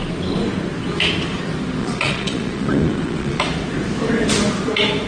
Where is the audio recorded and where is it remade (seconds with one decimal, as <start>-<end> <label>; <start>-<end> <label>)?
0.0-1.8 recorded; 1.8-3.4 remade; 3.4-5.1 recorded